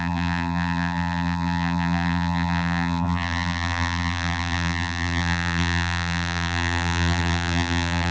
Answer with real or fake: fake